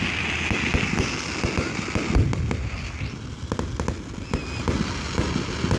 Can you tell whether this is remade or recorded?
recorded